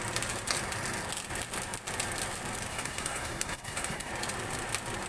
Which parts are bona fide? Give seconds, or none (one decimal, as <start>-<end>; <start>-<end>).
0.0-2.7; 4.1-5.1